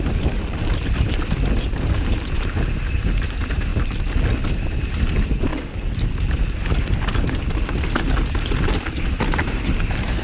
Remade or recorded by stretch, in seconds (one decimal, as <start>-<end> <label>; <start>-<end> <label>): 0.0-3.7 remade; 3.7-4.9 recorded; 4.9-5.5 remade; 5.5-8.9 recorded; 8.9-10.2 remade